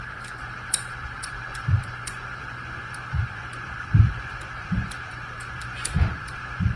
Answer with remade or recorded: remade